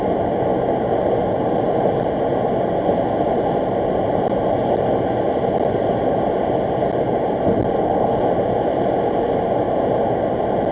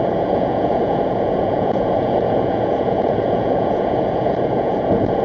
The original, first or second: first